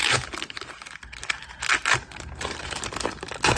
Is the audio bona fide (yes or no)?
yes